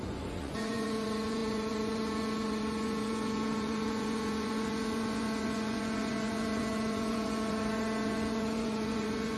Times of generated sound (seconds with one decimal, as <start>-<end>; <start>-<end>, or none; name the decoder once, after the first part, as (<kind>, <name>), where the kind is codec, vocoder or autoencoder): 0.0-9.4 (vocoder, Vocos)